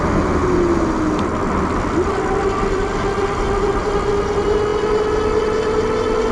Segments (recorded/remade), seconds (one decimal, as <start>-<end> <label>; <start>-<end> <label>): 0.0-6.3 recorded